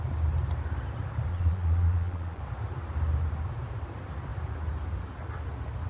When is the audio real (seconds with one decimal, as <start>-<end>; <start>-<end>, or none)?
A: 0.0-1.3; 2.4-5.9